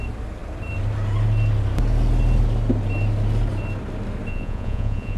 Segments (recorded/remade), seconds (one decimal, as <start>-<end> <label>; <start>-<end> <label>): 0.0-4.3 recorded; 4.3-5.2 remade